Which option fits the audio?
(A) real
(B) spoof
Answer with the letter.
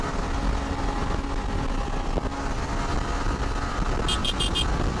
A